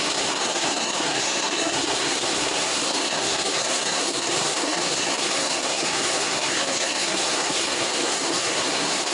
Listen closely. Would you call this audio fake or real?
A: fake